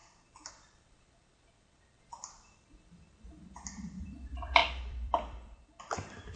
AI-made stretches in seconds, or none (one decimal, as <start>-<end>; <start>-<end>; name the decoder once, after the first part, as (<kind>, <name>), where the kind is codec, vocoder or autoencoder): 0.5-6.4 (vocoder, BigVGAN v2)